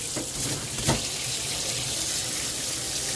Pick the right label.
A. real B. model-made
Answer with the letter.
A